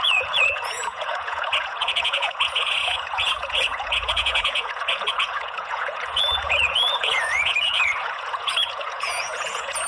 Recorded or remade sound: remade